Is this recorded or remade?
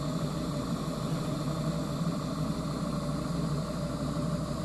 recorded